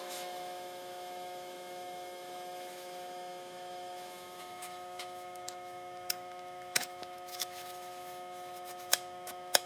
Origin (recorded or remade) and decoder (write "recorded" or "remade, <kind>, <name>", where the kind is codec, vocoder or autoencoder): remade, autoencoder, DAC-VAE